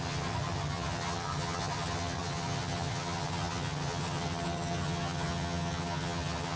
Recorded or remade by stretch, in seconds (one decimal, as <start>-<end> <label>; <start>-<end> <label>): 0.0-6.6 remade